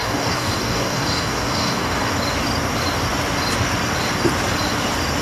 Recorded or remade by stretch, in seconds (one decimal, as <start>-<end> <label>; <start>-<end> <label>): 0.0-2.1 remade; 2.1-5.2 recorded

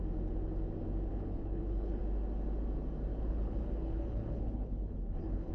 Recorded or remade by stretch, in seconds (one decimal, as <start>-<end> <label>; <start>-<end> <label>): 0.0-1.1 recorded; 1.1-2.0 remade; 2.0-3.1 recorded; 3.1-5.5 remade

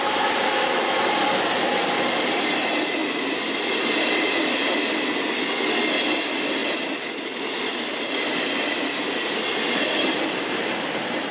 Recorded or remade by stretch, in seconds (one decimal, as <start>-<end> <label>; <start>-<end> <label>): 0.0-11.3 recorded

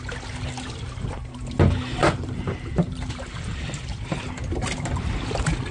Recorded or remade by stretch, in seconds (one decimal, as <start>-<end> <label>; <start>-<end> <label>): 0.0-2.0 recorded; 2.0-3.7 remade; 3.7-5.7 recorded

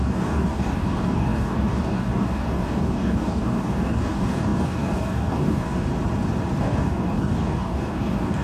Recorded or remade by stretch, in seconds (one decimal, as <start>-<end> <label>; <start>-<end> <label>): 0.0-5.9 remade; 5.9-6.6 recorded; 6.6-8.4 remade

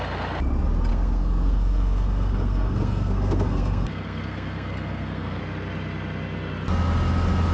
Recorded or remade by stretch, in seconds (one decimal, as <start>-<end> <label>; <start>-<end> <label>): 0.0-0.9 recorded; 0.9-5.4 remade; 5.4-7.5 recorded

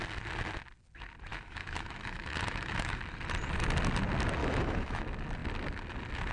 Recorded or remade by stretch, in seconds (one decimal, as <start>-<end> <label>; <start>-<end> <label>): 0.0-1.3 recorded; 1.3-3.0 remade; 3.0-4.4 recorded; 4.4-5.0 remade; 5.0-6.3 recorded

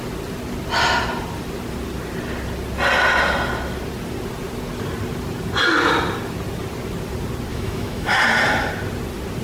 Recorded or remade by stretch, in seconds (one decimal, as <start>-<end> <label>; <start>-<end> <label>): 0.0-7.5 recorded; 7.5-8.2 remade; 8.2-9.4 recorded